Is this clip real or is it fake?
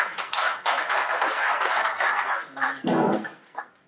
fake